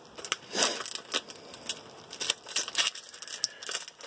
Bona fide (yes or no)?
yes